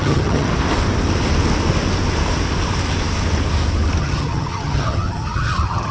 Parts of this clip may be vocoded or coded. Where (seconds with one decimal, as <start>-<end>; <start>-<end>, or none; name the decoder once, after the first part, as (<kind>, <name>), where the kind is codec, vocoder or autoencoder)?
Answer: 0.0-0.5 (vocoder, HiFi-GAN); 4.0-5.9